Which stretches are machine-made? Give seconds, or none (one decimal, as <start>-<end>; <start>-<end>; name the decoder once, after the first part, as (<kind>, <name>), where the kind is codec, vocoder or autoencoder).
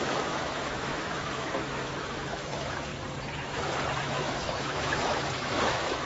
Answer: 0.0-2.9 (autoencoder, DAC-VAE); 4.0-6.1